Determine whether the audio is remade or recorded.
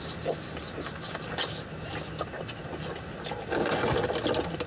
recorded